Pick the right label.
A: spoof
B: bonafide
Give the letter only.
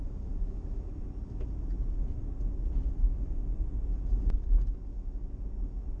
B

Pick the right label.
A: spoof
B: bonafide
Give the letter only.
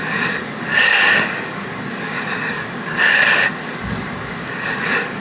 A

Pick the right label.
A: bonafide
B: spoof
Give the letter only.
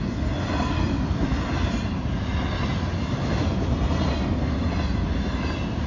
A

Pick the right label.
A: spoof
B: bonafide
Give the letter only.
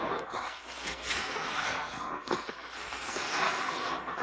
A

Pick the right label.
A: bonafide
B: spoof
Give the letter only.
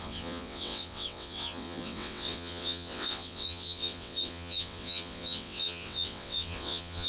B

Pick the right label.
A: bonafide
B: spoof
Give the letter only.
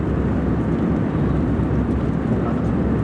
B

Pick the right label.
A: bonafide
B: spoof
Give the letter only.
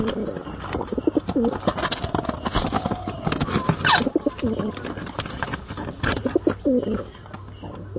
A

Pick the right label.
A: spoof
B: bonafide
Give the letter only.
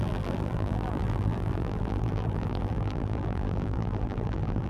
A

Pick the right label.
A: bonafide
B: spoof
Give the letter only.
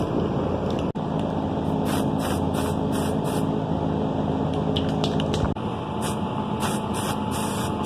A